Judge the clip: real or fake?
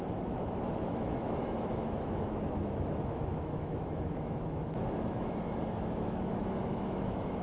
fake